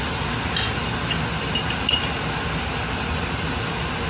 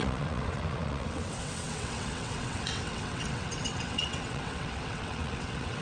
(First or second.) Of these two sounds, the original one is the first